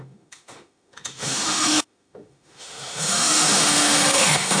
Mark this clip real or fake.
fake